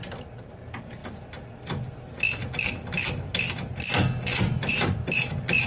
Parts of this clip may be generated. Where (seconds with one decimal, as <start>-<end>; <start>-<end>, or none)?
0.0-1.0; 4.4-5.7